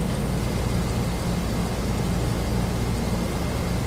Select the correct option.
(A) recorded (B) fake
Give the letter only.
A